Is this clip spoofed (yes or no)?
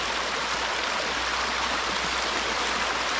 no